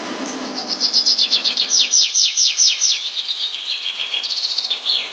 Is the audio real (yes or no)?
no